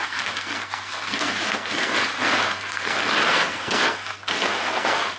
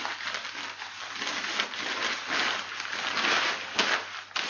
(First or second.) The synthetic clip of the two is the first